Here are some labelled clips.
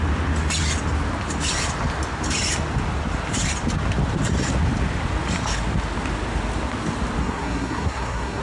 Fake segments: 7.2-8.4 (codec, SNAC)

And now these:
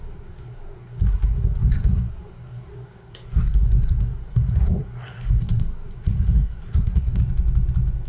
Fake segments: 0.0-7.2 (codec, SNAC)

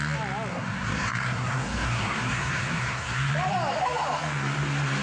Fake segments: 0.5-3.3 (codec, SNAC)

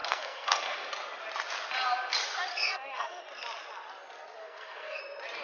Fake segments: 0.0-0.9 (codec, SNAC); 2.5-3.2; 4.4-5.0

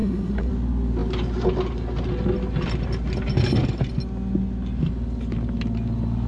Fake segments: 0.0-0.5 (codec, SNAC)

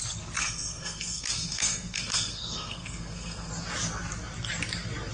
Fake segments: 0.4-3.5 (codec, SNAC)

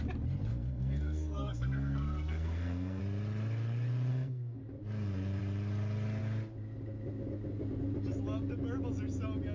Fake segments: 0.5-3.0 (codec, SNAC); 4.1-4.6

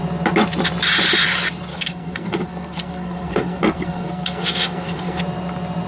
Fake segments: 1.7-5.2 (codec, SNAC)